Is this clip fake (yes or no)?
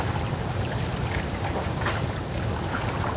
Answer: no